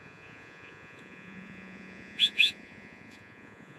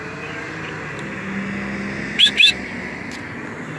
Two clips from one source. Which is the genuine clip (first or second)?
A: second